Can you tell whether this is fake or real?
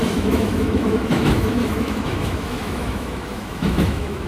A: fake